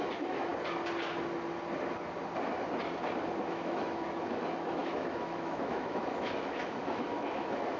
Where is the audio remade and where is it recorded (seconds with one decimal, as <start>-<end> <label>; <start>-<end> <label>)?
0.0-0.5 remade; 0.5-3.5 recorded; 3.5-7.8 remade